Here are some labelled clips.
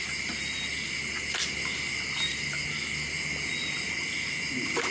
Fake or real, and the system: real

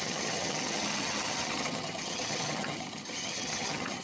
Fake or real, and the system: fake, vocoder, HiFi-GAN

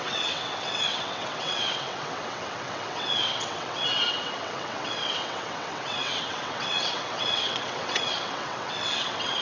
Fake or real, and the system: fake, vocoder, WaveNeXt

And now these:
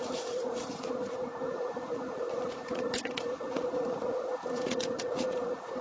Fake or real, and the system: fake, vocoder, Vocos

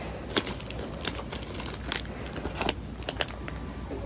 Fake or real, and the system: real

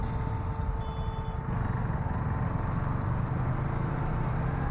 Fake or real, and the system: real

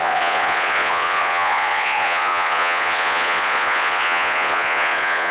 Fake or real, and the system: fake, vocoder, Vocos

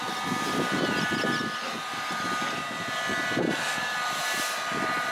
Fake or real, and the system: real